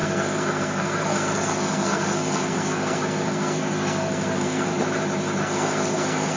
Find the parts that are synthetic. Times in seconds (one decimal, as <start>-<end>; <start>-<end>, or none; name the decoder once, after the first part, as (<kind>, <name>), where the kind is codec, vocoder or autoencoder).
0.0-4.7 (codec, SNAC); 5.4-6.4